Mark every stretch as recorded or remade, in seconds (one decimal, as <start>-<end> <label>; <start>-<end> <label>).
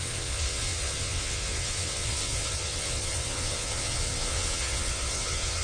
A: 0.0-5.6 remade